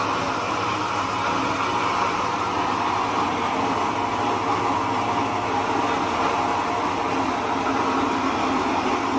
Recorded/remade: recorded